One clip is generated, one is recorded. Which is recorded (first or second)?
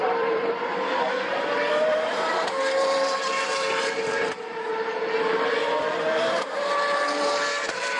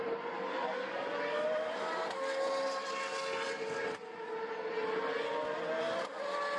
second